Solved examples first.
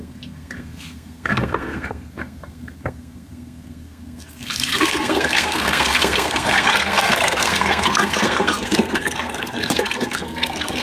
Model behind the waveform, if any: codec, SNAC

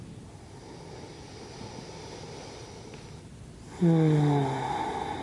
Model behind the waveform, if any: none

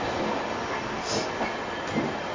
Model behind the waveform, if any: none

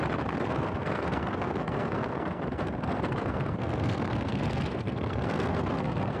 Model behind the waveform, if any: codec, SNAC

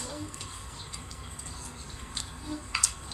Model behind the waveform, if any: codec, SNAC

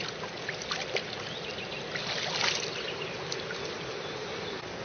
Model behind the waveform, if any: none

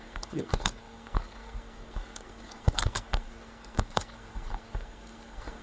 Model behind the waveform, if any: codec, SNAC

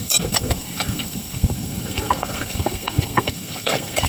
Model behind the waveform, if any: codec, SNAC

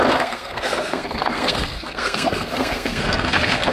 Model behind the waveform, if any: codec, SNAC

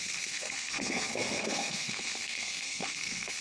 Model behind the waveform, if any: codec, SNAC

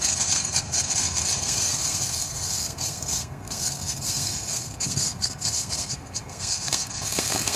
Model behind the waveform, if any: codec, SNAC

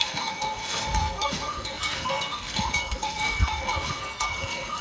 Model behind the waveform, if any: codec, SNAC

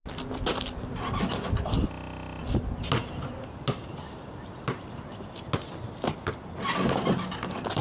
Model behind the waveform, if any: none